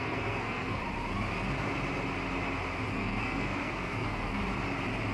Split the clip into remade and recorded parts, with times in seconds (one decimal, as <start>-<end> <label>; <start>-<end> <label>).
0.0-0.8 remade; 0.8-2.9 recorded; 2.9-4.4 remade; 4.4-5.1 recorded